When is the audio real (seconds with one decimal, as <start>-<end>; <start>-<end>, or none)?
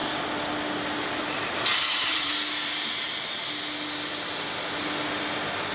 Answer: 0.0-1.7; 2.3-5.7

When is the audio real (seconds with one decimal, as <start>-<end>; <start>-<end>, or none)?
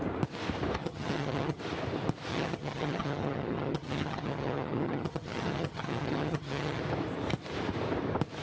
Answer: 0.0-0.8; 1.6-2.3; 6.8-8.4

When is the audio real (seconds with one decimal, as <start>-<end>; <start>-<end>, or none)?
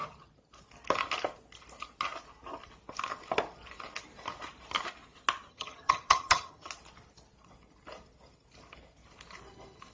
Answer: 0.0-5.5; 6.7-9.9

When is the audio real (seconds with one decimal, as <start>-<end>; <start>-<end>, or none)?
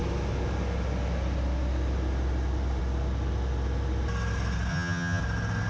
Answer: 0.0-4.7; 5.2-5.7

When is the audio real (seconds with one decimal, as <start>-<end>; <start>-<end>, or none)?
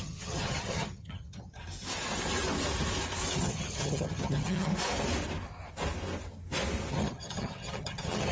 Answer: 1.6-3.4; 4.7-6.9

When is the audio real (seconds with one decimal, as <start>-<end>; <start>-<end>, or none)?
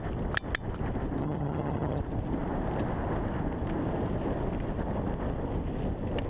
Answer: 0.0-1.2; 2.0-6.3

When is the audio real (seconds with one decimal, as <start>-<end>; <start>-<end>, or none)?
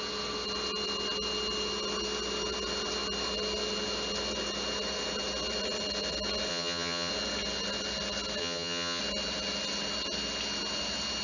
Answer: 0.0-6.5; 7.1-8.4; 9.0-11.2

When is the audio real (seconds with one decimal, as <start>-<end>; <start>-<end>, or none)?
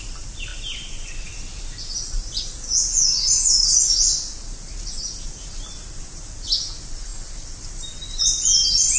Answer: 0.0-9.0